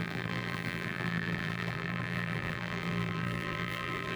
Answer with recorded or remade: remade